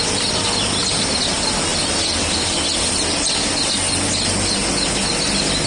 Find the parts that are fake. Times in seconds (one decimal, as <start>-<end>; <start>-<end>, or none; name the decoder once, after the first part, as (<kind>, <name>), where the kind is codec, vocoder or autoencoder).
none